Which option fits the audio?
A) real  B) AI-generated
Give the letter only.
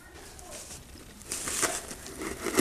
B